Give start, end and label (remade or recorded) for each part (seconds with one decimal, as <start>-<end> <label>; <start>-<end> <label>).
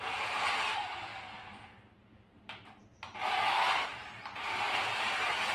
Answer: 0.0-1.1 remade; 1.1-2.0 recorded; 2.0-2.8 remade; 2.8-3.9 recorded; 3.9-5.5 remade